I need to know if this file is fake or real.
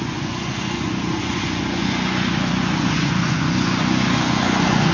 fake